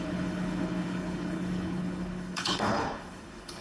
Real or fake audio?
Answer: fake